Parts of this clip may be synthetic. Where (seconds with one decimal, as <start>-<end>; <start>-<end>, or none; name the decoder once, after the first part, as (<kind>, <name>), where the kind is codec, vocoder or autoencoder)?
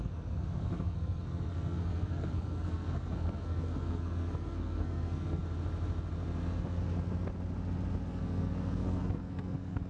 0.0-5.4 (codec, SNAC); 8.1-9.9